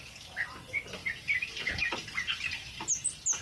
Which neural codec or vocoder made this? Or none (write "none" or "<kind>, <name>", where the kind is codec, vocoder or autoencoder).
none